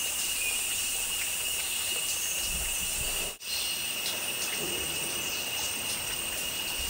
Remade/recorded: recorded